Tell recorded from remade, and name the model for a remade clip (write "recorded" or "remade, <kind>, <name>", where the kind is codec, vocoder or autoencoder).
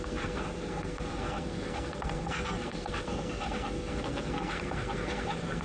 remade, codec, SNAC